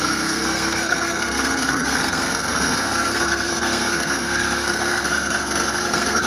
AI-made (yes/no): yes